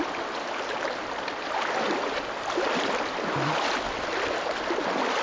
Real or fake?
real